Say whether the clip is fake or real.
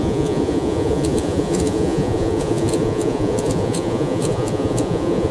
fake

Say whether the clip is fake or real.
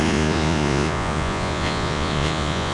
fake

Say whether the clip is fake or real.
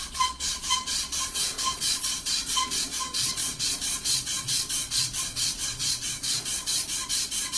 fake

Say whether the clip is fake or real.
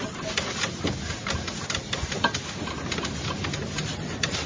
real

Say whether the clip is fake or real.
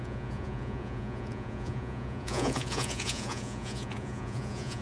fake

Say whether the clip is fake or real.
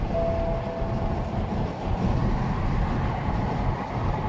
real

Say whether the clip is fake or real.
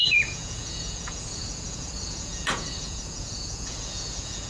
fake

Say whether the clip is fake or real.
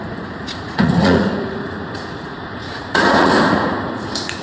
fake